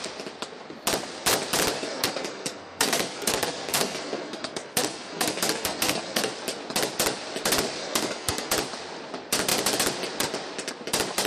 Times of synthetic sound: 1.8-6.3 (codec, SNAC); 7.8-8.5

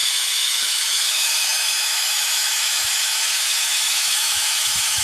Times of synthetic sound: 0.0-5.0 (autoencoder, DAC-VAE)